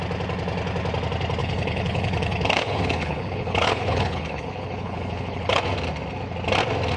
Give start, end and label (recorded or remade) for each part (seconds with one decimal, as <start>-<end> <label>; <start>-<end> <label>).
0.0-1.4 recorded; 1.4-5.6 remade; 5.6-7.0 recorded